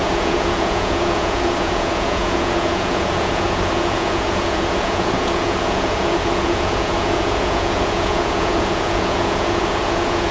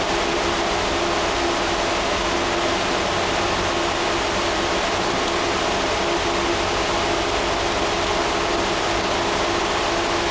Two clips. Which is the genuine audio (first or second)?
second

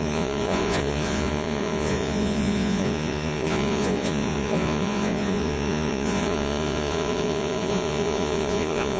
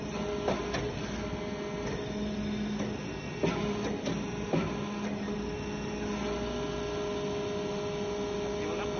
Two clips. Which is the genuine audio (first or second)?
second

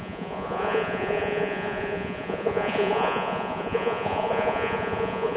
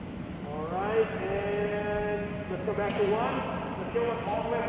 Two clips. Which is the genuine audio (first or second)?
second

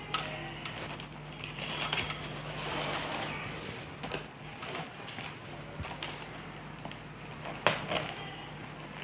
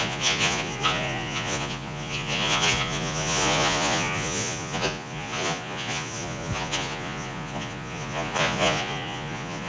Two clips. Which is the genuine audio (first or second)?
first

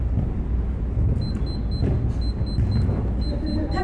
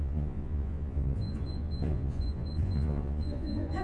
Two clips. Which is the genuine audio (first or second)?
first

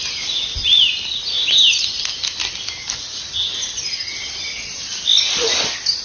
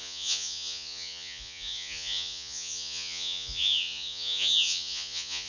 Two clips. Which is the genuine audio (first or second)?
first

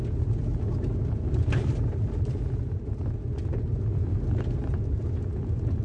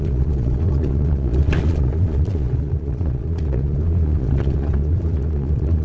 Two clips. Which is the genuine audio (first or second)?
first